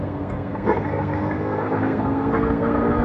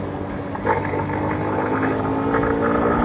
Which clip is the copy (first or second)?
first